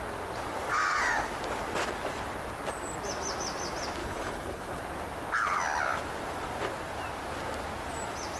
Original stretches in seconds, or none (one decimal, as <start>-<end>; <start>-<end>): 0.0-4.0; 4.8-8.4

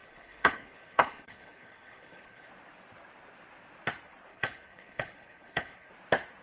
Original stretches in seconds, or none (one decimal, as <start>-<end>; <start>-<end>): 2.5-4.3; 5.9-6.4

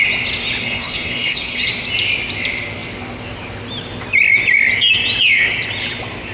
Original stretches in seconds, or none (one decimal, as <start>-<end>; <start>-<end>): 0.0-0.6; 1.7-6.3

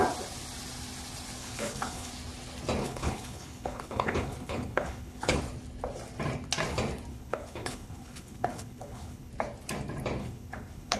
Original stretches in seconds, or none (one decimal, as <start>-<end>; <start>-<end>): 0.0-1.4; 2.1-2.8; 5.4-7.1; 9.3-10.2

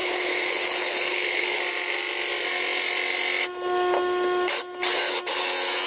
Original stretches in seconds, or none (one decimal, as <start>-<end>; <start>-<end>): 1.6-5.9